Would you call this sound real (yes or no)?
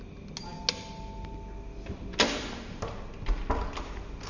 yes